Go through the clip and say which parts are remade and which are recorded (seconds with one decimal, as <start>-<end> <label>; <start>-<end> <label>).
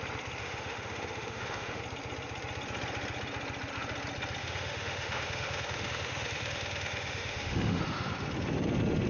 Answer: 0.0-0.4 recorded; 0.4-1.8 remade; 1.8-4.4 recorded; 4.4-7.8 remade; 7.8-9.1 recorded